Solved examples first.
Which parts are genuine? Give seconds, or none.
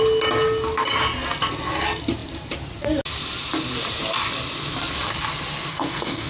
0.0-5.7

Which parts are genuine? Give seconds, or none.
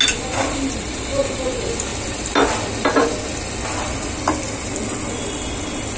0.0-6.0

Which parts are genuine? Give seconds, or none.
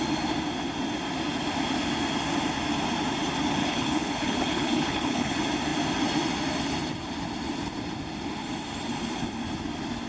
0.0-3.6; 5.3-10.1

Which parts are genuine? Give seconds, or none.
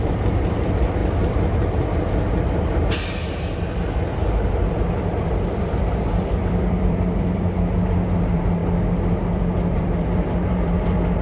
1.0-4.5; 8.6-9.8